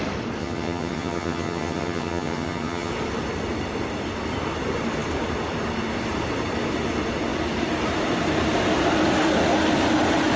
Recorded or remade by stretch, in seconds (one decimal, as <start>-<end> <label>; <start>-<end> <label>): 0.0-0.4 recorded; 0.4-2.9 remade; 2.9-10.4 recorded